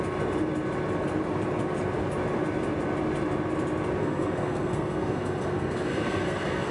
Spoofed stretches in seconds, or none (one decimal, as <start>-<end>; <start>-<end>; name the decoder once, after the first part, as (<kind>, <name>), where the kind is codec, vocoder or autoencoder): 4.0-6.7 (codec, SNAC)